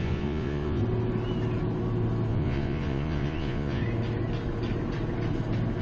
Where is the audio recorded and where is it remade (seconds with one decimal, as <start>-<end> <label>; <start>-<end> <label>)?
0.0-0.8 remade; 0.8-2.3 recorded; 2.3-3.8 remade; 3.8-5.8 recorded